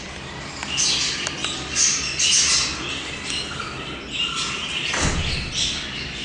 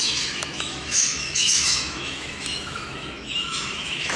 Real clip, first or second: first